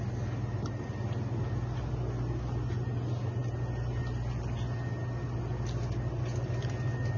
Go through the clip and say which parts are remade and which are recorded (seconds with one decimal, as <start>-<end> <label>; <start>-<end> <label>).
0.0-7.2 recorded